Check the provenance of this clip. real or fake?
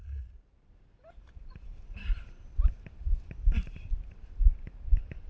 fake